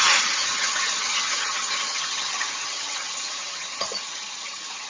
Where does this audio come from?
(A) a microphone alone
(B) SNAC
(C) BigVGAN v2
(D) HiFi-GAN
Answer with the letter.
D